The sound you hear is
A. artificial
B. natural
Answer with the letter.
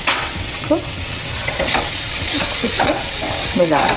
A